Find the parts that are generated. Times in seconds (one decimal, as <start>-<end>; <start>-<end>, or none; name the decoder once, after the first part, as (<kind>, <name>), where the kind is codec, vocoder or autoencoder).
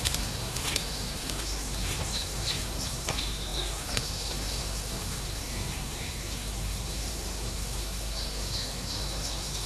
0.0-9.7 (codec, SNAC)